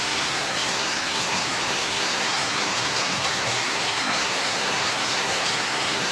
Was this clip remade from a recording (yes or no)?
yes